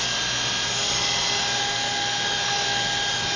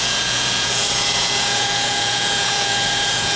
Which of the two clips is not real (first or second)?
second